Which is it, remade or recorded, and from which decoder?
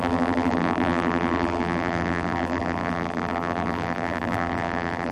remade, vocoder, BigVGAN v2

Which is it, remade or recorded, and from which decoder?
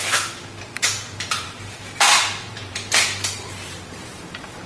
remade, vocoder, BigVGAN v2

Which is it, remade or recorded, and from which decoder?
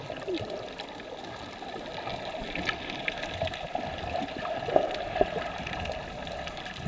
remade, vocoder, BigVGAN v2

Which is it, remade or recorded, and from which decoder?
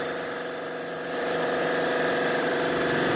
remade, vocoder, BigVGAN v2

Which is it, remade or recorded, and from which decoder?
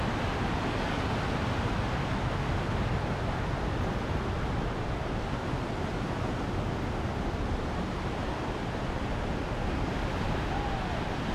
recorded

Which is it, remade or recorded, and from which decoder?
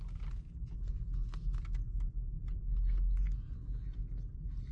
recorded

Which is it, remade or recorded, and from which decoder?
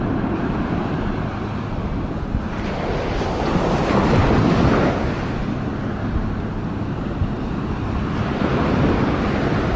recorded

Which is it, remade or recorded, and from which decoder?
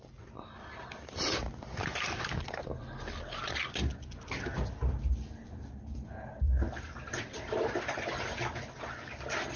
recorded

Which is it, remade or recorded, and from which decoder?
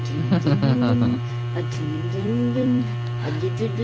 remade, vocoder, BigVGAN v2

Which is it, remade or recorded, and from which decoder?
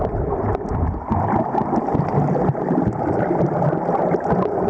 recorded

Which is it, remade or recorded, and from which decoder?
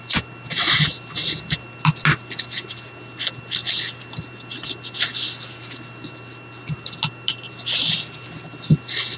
recorded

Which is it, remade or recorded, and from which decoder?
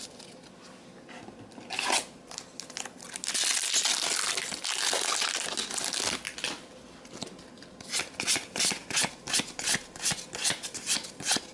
recorded